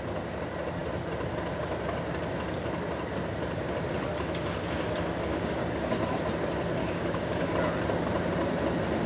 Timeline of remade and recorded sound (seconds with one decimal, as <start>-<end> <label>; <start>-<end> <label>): 0.0-5.3 recorded; 5.3-5.9 remade; 5.9-6.8 recorded; 6.8-7.5 remade; 7.5-9.1 recorded